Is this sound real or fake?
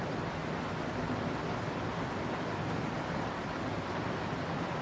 real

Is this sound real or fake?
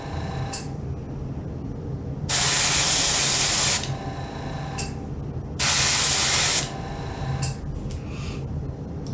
real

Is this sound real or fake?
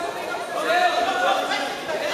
real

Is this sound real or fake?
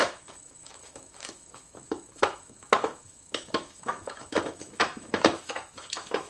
fake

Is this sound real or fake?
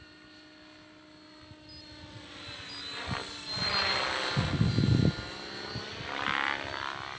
real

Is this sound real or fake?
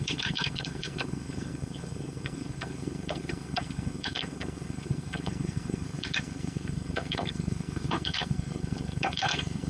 fake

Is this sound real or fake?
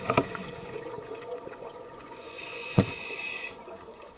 fake